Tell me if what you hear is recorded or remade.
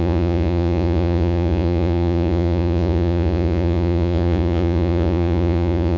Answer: remade